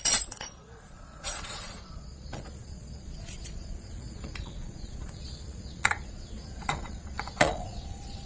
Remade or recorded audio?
remade